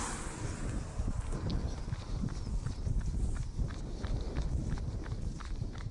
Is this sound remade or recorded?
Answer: recorded